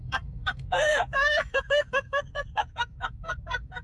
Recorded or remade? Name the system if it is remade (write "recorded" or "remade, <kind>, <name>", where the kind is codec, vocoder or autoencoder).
remade, codec, SNAC